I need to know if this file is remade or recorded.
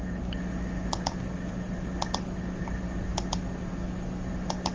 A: recorded